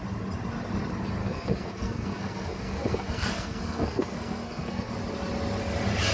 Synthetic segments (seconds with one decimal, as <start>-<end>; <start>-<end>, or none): 1.2-4.9